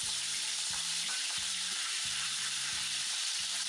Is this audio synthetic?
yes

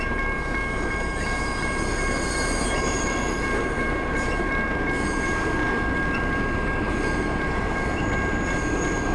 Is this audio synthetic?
yes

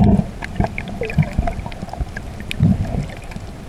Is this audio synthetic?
no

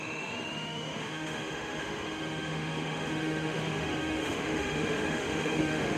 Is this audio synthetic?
yes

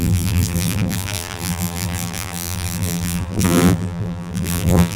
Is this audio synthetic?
yes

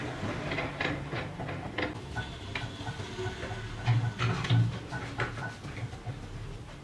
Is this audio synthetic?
no